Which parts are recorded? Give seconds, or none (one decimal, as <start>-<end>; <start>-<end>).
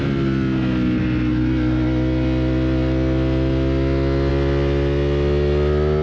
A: 0.0-6.0